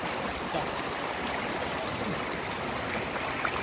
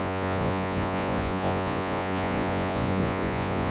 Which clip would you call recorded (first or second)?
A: first